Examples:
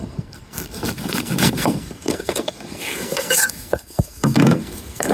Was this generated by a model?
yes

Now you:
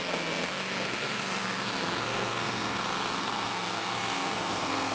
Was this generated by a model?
yes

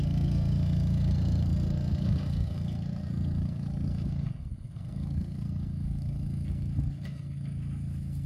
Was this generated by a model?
yes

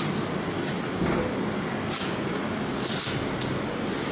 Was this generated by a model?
no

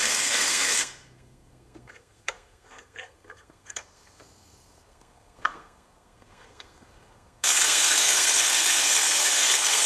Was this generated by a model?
yes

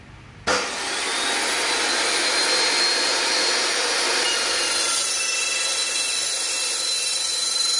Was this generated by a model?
no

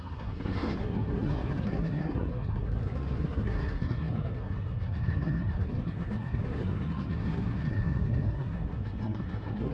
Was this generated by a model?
yes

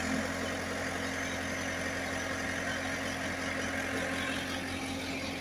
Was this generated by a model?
no